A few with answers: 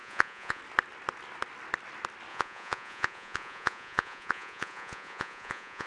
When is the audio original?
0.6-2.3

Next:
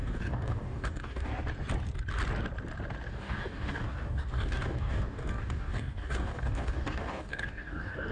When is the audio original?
1.3-3.1

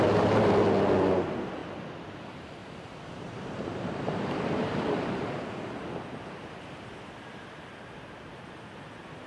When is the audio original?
0.0-2.6; 5.4-9.3

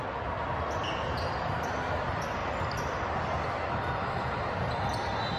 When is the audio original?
0.0-5.4

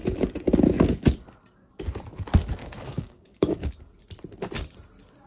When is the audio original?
0.0-2.6; 3.7-5.3

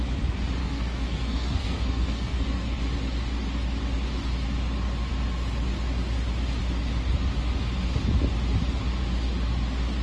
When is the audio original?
0.0-0.6; 2.8-10.0

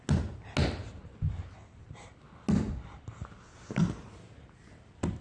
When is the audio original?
0.0-5.2

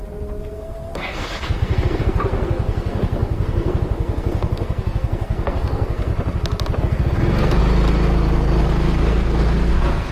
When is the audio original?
6.1-6.8; 7.6-8.6